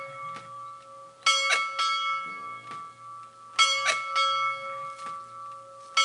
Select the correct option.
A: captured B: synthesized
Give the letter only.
A